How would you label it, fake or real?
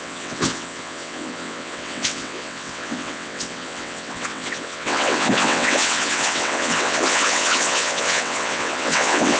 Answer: fake